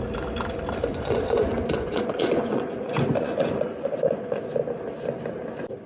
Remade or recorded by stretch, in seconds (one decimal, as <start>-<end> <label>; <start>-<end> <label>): 0.0-0.9 recorded; 0.9-4.4 remade; 4.4-5.9 recorded